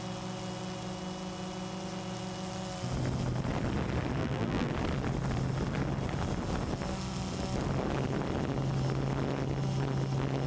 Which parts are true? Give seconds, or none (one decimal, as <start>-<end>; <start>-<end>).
0.0-4.2; 4.7-10.5